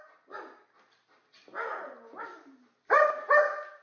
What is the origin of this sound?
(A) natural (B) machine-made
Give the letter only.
A